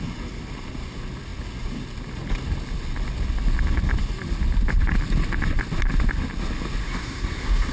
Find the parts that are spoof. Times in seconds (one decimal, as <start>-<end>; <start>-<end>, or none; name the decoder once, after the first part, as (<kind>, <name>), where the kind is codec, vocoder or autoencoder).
6.8-7.7 (codec, SNAC)